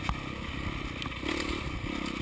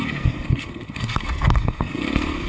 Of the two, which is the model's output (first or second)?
second